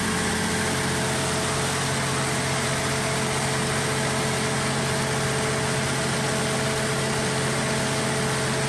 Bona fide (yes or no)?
yes